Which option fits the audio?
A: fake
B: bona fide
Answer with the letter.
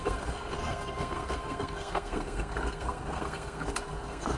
A